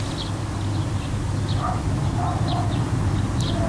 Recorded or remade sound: recorded